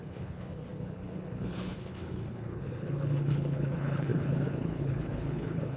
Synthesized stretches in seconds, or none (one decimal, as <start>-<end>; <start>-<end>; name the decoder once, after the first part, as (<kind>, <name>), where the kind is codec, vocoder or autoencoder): 0.0-5.8 (codec, HILCodec)